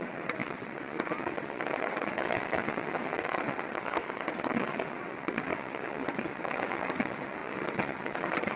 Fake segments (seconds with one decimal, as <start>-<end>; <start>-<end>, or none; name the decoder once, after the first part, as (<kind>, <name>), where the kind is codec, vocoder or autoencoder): 0.0-8.6 (vocoder, WaveNeXt)